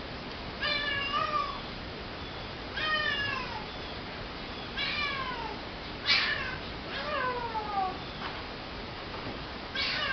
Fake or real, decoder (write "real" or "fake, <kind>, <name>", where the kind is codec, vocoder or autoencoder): real